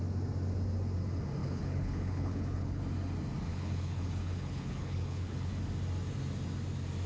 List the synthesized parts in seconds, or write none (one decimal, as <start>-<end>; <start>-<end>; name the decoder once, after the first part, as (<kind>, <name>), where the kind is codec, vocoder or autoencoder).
1.4-2.8 (codec, HILCodec); 3.5-5.5